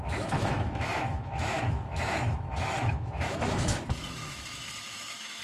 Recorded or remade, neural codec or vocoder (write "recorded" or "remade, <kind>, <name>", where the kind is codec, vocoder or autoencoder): remade, autoencoder, DAC-VAE